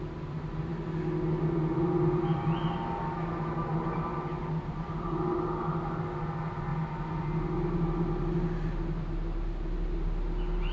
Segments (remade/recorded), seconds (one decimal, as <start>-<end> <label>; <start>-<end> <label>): 0.0-10.7 recorded